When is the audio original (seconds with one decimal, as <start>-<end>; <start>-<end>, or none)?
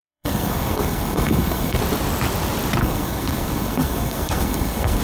1.8-2.8